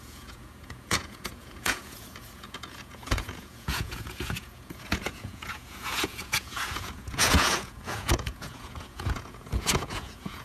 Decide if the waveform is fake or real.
fake